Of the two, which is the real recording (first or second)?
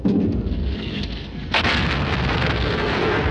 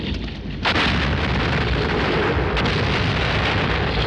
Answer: second